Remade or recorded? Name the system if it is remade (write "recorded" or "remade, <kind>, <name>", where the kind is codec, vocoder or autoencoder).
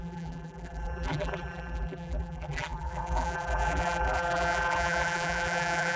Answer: remade, vocoder, BigVGAN v2